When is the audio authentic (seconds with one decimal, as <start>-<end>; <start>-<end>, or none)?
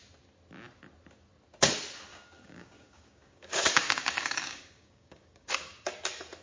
0.0-2.1; 5.9-6.4